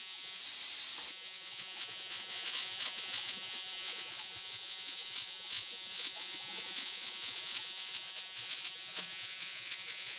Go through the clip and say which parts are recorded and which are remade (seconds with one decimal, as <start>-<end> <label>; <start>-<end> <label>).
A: 0.0-0.4 remade; 0.4-1.1 recorded; 1.1-10.2 remade

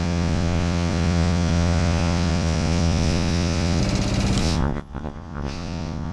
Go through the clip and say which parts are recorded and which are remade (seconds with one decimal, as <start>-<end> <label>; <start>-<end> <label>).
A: 0.0-3.8 remade; 3.8-4.4 recorded; 4.4-6.1 remade

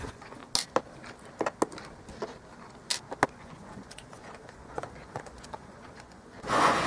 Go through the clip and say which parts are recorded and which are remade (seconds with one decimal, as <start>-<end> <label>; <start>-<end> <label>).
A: 0.0-0.4 remade; 0.4-3.3 recorded; 3.3-6.9 remade

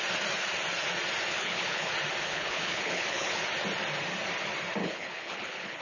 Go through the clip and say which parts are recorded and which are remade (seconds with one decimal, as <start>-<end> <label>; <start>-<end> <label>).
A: 0.0-1.3 recorded; 1.3-1.9 remade; 1.9-2.3 recorded; 2.3-3.4 remade; 3.4-4.8 recorded; 4.8-5.8 remade

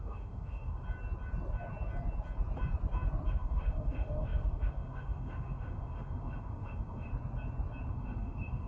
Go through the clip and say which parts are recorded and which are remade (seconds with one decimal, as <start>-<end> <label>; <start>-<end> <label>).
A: 0.0-0.8 remade; 0.8-3.3 recorded; 3.3-7.1 remade; 7.1-7.9 recorded; 7.9-8.7 remade

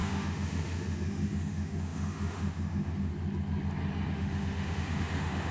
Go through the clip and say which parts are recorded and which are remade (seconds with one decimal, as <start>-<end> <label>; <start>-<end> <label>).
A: 0.0-3.1 remade; 3.1-4.1 recorded; 4.1-5.5 remade

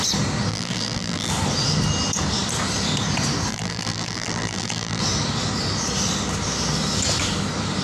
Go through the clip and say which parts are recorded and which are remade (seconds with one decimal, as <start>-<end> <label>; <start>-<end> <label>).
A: 0.0-0.5 recorded; 0.5-1.3 remade; 1.3-3.5 recorded; 3.5-5.0 remade; 5.0-7.8 recorded